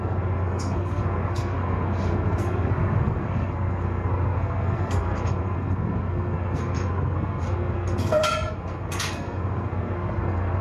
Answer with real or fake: fake